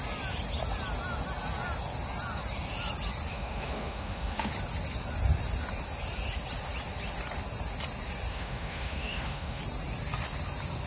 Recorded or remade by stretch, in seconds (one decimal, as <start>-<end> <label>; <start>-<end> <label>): 0.0-3.3 recorded; 3.3-4.5 remade; 4.5-8.3 recorded; 8.3-9.6 remade; 9.6-10.9 recorded